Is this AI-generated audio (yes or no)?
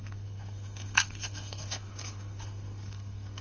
yes